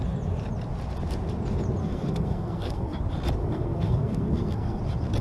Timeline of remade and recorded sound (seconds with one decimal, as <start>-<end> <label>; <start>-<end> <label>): 0.0-1.8 recorded; 1.8-3.0 remade; 3.0-3.4 recorded; 3.4-4.8 remade; 4.8-5.2 recorded